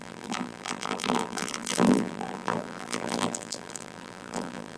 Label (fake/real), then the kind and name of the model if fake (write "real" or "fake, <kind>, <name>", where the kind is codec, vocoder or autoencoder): fake, vocoder, BigVGAN v2